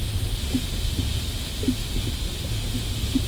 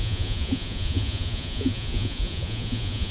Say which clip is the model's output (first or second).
second